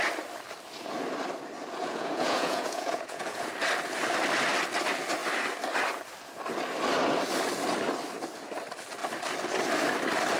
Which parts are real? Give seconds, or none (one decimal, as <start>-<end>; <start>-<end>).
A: 0.0-1.8; 3.5-10.4